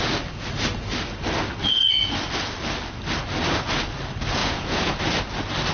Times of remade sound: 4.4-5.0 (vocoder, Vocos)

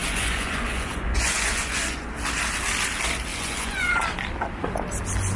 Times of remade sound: 0.0-2.1 (vocoder, Vocos); 3.3-4.0

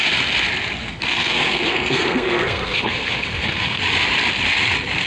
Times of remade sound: 0.8-3.8 (codec, SNAC)

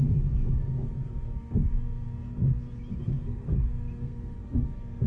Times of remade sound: 0.0-2.5 (codec, SNAC); 3.0-5.1

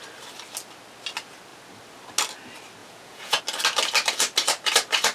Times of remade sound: 2.8-3.4 (vocoder, Vocos)

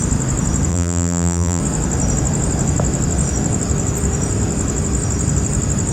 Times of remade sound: 0.7-1.6 (vocoder, BigVGAN v2)

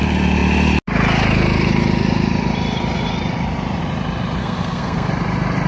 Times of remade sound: 4.4-5.1 (codec, SNAC)